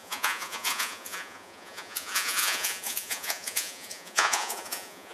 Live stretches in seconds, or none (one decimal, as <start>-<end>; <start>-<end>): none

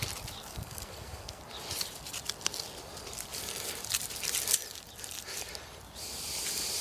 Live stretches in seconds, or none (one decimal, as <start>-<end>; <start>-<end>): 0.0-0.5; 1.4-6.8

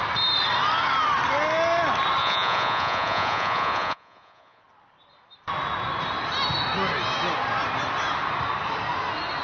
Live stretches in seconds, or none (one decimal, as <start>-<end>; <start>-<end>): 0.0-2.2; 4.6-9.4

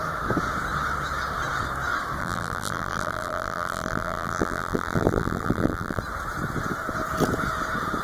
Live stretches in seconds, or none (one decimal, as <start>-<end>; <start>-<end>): 0.0-2.2; 6.0-8.0

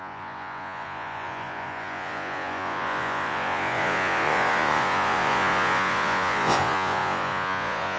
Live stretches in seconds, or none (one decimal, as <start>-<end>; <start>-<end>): none

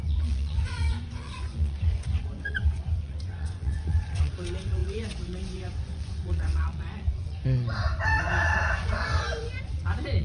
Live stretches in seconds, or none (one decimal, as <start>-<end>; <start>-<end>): none

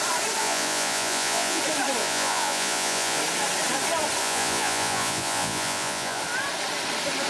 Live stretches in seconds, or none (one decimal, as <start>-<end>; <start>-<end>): 0.0-0.4; 1.6-2.0; 3.2-4.2; 6.2-7.3

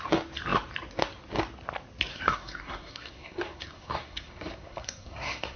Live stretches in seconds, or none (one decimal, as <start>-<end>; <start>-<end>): 0.0-2.1